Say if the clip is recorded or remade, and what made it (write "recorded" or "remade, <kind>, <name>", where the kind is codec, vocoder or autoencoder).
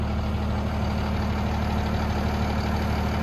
recorded